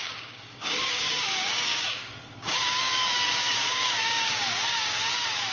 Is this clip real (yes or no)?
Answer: no